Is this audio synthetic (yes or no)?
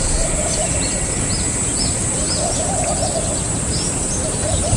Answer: yes